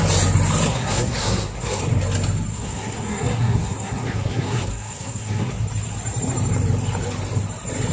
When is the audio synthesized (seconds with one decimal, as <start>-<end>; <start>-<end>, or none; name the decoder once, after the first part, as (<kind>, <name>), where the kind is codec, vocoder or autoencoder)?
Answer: 0.7-1.8 (codec, SNAC); 2.5-5.5

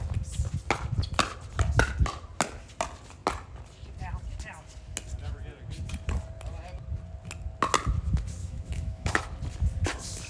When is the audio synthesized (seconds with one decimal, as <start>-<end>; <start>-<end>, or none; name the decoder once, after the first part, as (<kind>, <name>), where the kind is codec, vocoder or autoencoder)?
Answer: 8.4-9.2 (autoencoder, DAC-VAE)

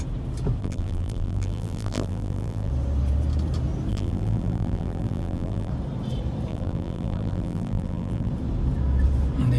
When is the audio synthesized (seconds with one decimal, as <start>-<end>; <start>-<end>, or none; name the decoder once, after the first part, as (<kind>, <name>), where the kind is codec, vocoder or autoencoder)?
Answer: 0.6-2.7 (vocoder, BigVGAN v2); 3.9-5.7; 6.5-8.3

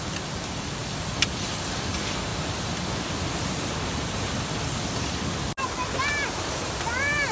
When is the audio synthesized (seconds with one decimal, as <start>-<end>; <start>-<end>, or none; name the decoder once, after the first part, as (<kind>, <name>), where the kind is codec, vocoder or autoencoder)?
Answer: none

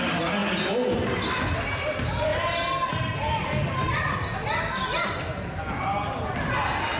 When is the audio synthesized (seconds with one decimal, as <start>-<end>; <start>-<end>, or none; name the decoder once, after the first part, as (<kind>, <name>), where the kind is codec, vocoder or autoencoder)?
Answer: none

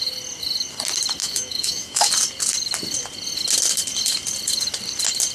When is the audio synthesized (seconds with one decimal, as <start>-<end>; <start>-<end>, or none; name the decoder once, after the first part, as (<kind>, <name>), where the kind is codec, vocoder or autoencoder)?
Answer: 1.2-2.1 (autoencoder, DAC-VAE)